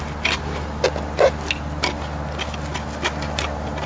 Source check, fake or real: real